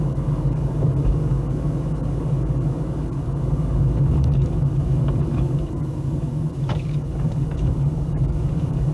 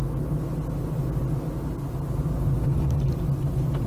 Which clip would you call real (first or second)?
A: second